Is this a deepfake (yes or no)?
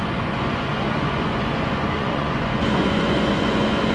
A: yes